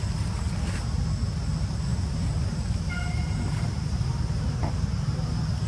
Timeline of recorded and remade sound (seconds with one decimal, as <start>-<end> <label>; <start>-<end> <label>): 0.0-1.9 recorded; 1.9-5.3 remade; 5.3-5.7 recorded